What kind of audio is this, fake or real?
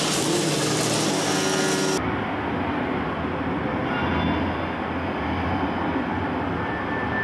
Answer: real